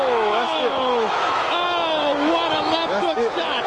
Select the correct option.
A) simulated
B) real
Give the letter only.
A